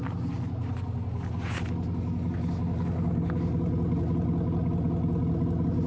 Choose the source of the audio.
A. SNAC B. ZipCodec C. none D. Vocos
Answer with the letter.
C